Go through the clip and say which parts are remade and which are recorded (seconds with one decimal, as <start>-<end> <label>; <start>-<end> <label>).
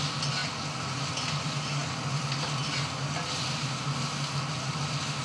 0.0-5.2 recorded